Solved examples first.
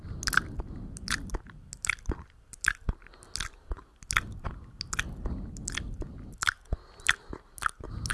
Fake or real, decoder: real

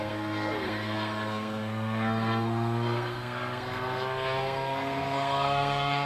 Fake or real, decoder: fake, codec, SNAC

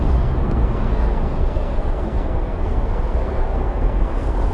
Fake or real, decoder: fake, codec, SNAC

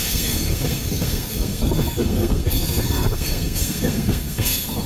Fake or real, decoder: fake, codec, SNAC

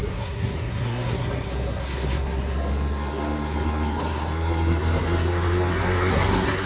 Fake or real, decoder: fake, codec, SNAC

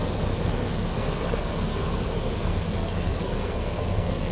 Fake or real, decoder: fake, codec, SNAC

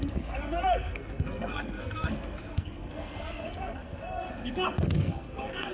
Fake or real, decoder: fake, codec, SNAC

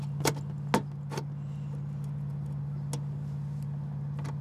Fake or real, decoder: real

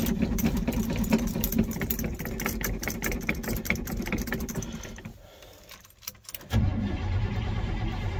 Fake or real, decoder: real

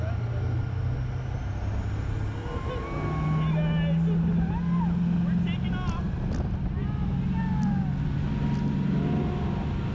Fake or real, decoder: real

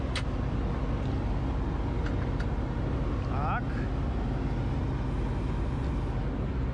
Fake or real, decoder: real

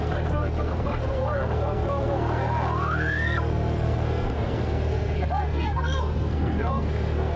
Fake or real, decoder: fake, codec, SNAC